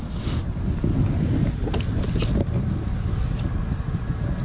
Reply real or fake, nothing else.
real